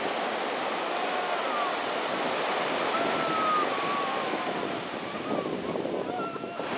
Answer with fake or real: real